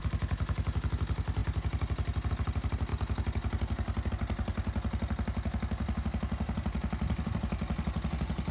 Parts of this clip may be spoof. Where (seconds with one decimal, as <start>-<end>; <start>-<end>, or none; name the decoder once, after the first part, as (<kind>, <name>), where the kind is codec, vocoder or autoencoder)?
none